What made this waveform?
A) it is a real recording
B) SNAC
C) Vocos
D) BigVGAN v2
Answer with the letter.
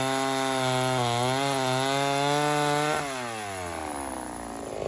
A